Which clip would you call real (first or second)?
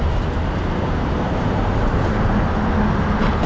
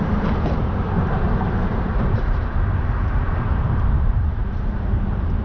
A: first